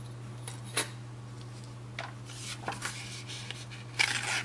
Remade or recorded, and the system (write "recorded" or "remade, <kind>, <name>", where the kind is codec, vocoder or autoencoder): recorded